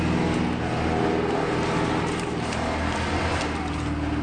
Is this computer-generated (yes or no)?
no